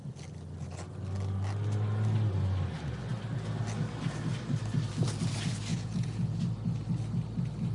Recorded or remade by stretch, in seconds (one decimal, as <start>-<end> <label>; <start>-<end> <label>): 0.0-5.7 recorded; 5.7-6.4 remade; 6.4-7.7 recorded